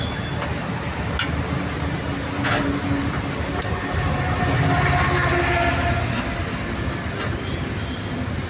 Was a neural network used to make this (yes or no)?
no